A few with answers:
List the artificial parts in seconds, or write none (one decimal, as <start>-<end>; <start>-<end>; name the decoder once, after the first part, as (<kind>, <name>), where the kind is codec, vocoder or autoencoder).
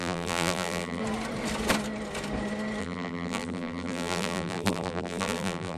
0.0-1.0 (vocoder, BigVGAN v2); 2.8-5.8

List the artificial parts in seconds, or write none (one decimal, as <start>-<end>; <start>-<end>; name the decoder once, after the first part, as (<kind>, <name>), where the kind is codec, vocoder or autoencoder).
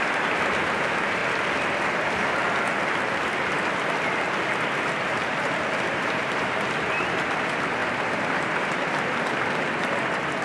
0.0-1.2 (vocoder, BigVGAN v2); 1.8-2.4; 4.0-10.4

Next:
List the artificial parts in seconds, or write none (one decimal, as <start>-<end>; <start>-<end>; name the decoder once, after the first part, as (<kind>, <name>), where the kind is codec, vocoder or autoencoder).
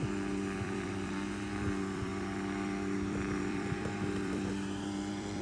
0.0-5.4 (vocoder, BigVGAN v2)